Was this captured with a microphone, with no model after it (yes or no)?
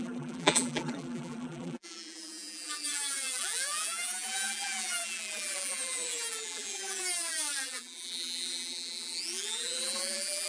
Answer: no